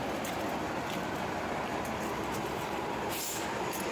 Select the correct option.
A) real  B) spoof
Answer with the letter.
A